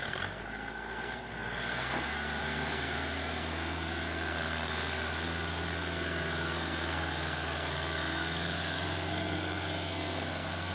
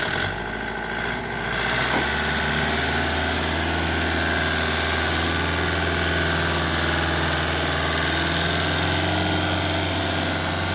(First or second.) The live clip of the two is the second